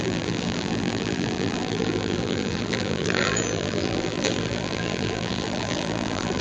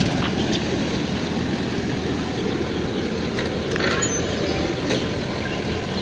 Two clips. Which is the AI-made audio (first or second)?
first